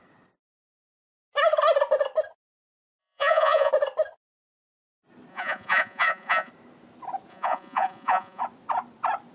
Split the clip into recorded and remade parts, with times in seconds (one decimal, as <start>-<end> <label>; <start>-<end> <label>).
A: 0.0-3.0 recorded; 3.0-3.7 remade; 3.7-5.3 recorded; 5.3-6.5 remade; 6.5-7.3 recorded; 7.3-8.4 remade; 8.4-9.3 recorded